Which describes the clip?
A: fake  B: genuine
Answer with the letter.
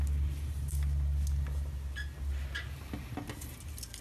B